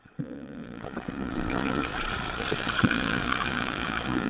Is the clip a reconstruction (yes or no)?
yes